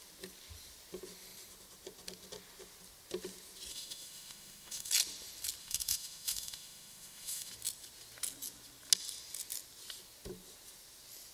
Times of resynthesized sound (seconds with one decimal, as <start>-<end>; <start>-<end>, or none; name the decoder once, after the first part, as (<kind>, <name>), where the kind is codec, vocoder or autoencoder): 3.7-4.9 (autoencoder, DAC-VAE); 5.6-7.5